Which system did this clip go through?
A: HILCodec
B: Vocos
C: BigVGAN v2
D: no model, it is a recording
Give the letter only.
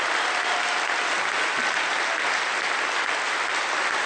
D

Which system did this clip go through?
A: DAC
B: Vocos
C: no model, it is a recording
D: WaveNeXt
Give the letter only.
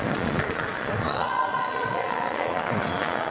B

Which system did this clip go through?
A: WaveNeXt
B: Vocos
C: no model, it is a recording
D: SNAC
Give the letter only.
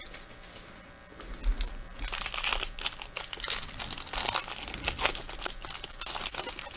C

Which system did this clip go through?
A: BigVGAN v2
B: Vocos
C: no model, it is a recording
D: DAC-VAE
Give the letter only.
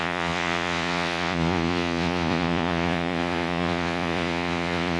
B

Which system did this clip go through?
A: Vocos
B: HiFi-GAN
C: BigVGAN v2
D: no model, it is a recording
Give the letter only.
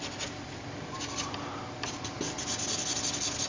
D